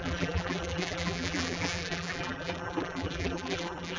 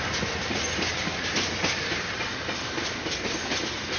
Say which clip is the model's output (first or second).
first